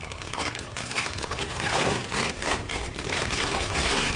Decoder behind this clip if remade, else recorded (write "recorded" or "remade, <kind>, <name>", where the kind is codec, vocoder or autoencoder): remade, codec, SNAC